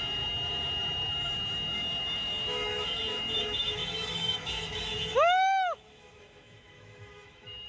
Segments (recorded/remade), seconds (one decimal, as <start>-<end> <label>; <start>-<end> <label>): 0.0-7.7 remade